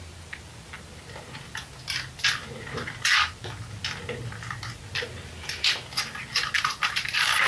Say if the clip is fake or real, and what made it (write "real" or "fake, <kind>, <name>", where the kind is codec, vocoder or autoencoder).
real